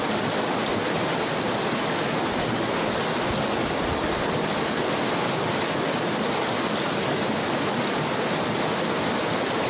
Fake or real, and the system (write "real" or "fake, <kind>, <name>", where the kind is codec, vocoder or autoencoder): real